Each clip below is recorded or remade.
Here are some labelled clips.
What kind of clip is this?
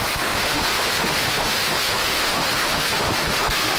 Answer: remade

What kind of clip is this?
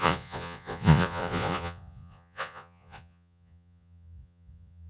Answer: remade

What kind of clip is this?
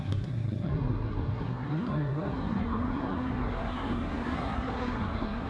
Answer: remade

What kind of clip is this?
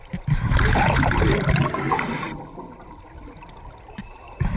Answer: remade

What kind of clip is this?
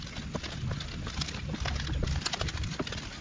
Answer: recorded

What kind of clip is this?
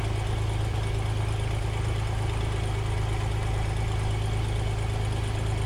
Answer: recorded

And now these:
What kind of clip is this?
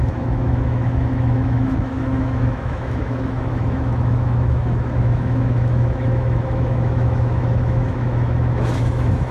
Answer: remade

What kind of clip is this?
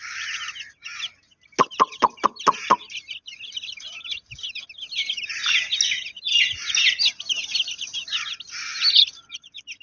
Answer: recorded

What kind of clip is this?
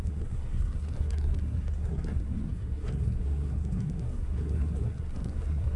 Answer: remade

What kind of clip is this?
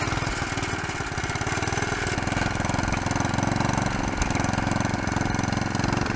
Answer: recorded